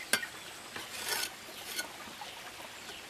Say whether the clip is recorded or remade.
recorded